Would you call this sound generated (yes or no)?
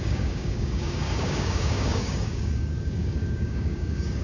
yes